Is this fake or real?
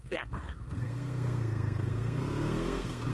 fake